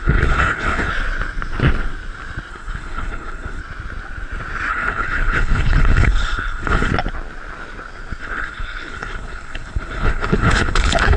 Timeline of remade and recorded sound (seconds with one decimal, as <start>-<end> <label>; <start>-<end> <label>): 0.0-0.9 remade; 0.9-2.5 recorded; 2.5-3.6 remade; 3.6-4.7 recorded; 4.7-6.9 remade; 6.9-8.2 recorded; 8.2-11.2 remade